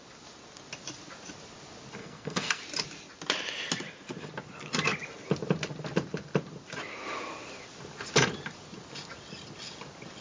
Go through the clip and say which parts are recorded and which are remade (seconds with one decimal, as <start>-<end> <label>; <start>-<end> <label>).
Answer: 0.0-2.0 recorded; 2.0-2.6 remade; 2.6-10.2 recorded